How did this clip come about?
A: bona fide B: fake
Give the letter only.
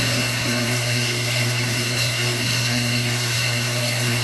B